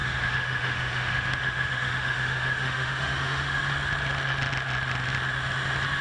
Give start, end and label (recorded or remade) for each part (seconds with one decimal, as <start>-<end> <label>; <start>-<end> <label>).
0.0-3.6 remade; 3.6-6.0 recorded